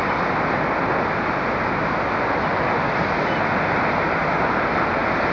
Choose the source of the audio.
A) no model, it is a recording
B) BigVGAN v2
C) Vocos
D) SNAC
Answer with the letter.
A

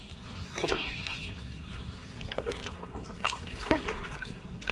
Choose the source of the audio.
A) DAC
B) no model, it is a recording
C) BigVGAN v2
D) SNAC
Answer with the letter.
D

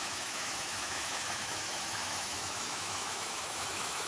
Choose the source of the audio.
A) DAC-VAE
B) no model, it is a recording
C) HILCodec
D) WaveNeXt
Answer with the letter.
A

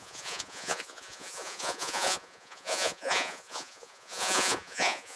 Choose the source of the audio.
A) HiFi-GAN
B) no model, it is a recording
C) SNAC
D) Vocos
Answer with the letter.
D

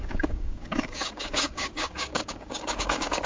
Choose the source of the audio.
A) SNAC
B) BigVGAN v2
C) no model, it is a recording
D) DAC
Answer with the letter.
D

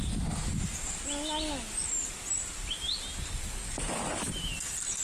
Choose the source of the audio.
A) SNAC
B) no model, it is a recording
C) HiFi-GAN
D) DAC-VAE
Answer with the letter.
B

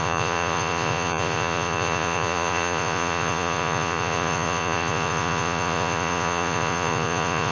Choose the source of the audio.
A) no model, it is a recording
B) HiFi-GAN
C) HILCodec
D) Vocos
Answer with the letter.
D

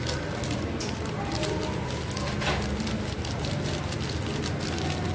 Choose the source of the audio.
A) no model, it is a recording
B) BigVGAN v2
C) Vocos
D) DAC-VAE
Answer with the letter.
A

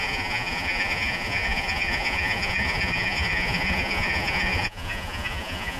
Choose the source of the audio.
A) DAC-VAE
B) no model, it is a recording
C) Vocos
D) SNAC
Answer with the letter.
C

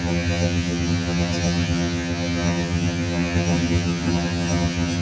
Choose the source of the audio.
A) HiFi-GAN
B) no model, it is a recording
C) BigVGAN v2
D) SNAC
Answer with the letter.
A